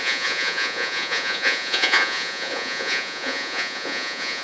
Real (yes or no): no